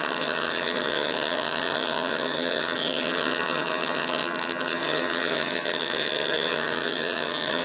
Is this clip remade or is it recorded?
remade